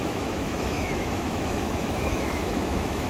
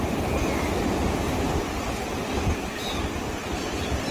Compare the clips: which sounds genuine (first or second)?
second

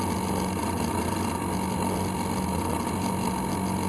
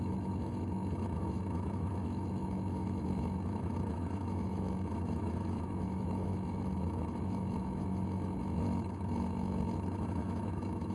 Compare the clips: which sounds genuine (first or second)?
first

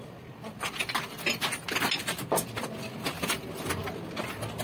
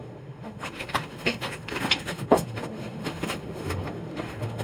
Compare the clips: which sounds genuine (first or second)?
first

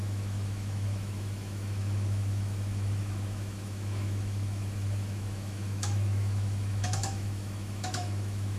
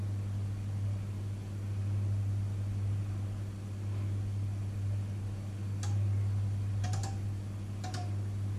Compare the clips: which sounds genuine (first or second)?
second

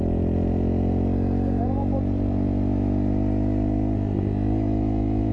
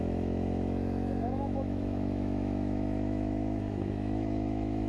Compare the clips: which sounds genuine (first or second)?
first